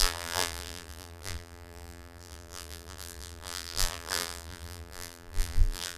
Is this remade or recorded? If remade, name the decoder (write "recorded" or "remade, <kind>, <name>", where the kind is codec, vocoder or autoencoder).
remade, vocoder, BigVGAN v2